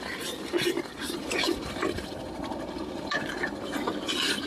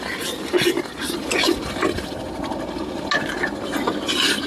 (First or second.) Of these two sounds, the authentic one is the second